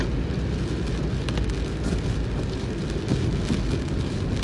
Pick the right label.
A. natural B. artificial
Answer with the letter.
A